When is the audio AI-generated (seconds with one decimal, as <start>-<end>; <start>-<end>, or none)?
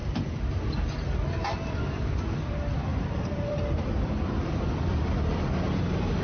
2.9-3.6